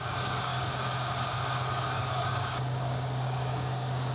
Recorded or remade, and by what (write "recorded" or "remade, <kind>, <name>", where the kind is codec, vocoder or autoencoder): remade, codec, DAC